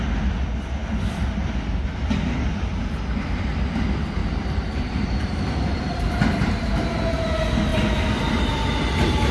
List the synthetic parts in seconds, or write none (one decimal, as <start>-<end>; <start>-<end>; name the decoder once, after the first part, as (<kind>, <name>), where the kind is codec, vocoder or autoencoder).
4.2-6.5 (vocoder, BigVGAN v2)